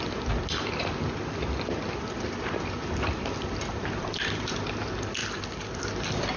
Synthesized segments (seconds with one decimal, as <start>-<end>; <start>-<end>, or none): none